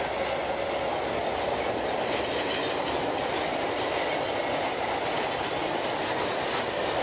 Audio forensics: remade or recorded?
recorded